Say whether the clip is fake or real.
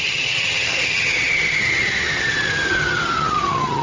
fake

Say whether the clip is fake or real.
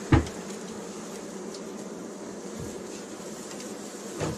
real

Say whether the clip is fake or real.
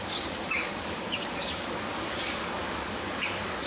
fake